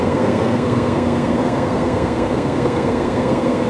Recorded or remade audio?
remade